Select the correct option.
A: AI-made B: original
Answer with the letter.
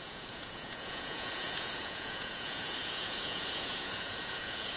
A